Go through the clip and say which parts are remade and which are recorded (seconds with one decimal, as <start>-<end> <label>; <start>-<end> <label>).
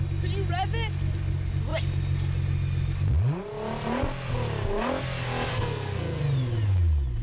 0.0-5.5 recorded; 5.5-6.2 remade; 6.2-7.2 recorded